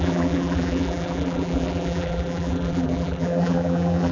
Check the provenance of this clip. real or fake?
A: fake